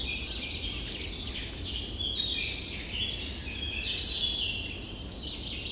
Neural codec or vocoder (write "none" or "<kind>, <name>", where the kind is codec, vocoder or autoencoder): none